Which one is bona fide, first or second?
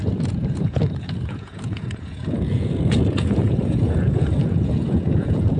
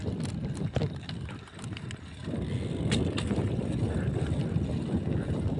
second